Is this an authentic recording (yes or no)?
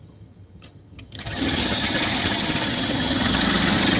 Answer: no